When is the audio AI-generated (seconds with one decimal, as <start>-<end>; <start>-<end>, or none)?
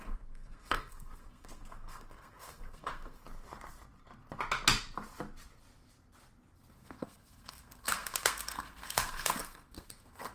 0.0-3.2; 6.7-10.3